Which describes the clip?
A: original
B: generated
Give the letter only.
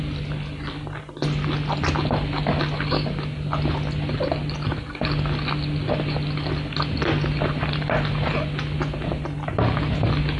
A